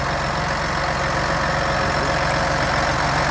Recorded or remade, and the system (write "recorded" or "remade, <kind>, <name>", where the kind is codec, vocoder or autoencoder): recorded